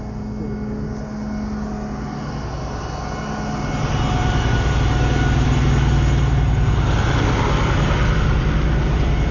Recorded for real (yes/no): yes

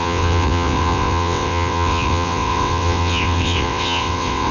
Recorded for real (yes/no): no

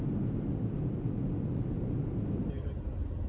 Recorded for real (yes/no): yes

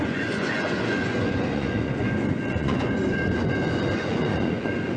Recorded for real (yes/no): no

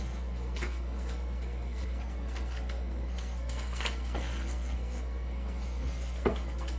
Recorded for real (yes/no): no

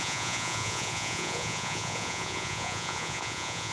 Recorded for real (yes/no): no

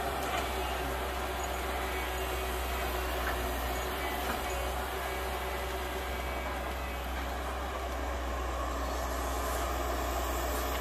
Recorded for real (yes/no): yes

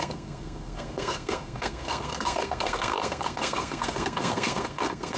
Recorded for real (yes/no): no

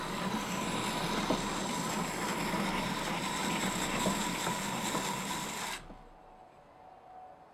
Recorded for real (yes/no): yes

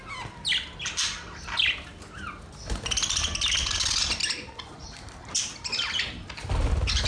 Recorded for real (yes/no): yes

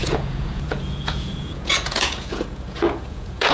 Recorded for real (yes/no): no